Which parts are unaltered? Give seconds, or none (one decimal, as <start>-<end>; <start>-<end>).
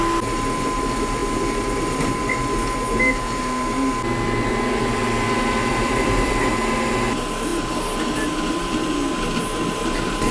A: 0.0-5.0; 6.3-7.5; 9.1-10.3